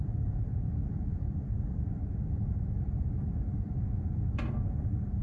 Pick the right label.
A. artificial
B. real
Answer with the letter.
A